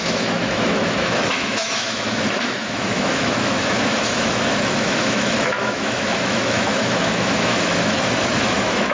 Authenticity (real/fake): fake